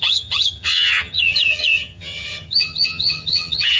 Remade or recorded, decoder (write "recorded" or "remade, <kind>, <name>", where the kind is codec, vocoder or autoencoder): remade, vocoder, HiFi-GAN